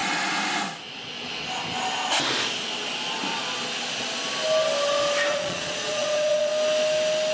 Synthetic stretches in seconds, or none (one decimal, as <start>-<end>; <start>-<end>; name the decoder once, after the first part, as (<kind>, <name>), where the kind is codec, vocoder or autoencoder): 5.3-6.5 (vocoder, Vocos)